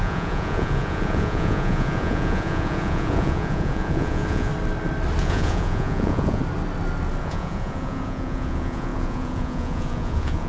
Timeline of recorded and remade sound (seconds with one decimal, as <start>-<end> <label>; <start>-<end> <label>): 0.0-4.5 remade; 4.5-5.2 recorded; 5.2-6.4 remade; 6.4-7.2 recorded; 7.2-10.5 remade